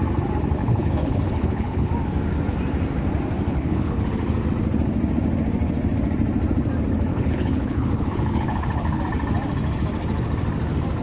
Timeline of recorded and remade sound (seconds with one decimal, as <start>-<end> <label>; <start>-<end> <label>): 0.0-0.6 recorded; 0.6-1.9 remade; 1.9-3.5 recorded; 3.5-4.0 remade; 4.0-7.1 recorded; 7.1-9.0 remade; 9.0-11.0 recorded